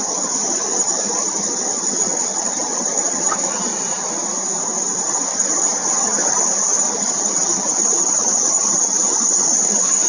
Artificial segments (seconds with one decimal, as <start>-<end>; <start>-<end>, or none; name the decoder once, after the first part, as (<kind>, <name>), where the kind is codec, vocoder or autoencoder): 0.0-3.7 (vocoder, HiFi-GAN); 5.0-10.1